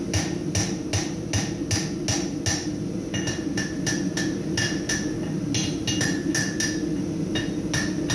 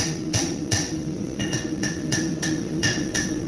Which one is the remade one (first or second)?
second